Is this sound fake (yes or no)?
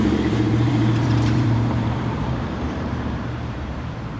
yes